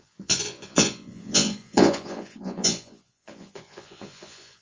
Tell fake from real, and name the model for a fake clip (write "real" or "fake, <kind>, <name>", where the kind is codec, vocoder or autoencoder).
fake, vocoder, Vocos